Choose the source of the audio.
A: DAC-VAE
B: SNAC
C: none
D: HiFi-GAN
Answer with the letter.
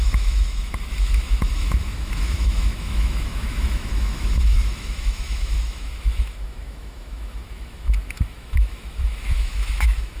A